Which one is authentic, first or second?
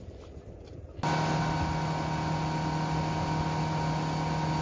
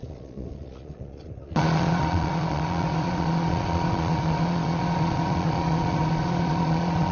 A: first